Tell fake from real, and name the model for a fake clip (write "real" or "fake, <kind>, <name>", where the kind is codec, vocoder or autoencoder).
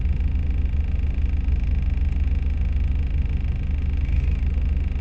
real